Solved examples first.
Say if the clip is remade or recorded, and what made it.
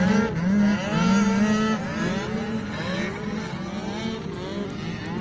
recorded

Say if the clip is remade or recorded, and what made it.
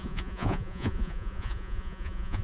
remade, vocoder, Vocos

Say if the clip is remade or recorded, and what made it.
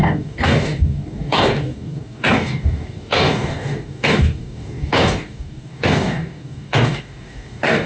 remade, codec, DAC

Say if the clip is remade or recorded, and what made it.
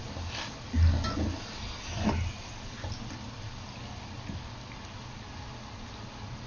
recorded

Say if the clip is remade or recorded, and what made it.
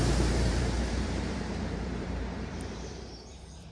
remade, vocoder, BigVGAN v2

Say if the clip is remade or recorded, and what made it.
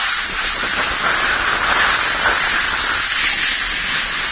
recorded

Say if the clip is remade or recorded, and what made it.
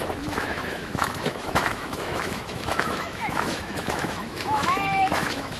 remade, autoencoder, DAC-VAE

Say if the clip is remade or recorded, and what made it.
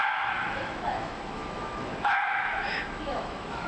remade, autoencoder, DAC-VAE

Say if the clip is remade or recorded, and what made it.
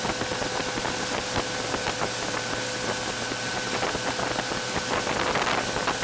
recorded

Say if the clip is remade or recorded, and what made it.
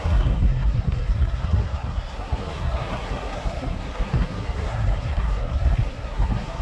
remade, codec, SNAC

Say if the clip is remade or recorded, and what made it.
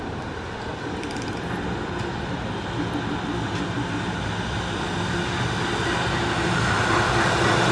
recorded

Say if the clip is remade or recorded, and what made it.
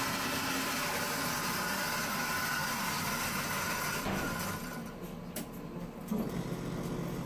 recorded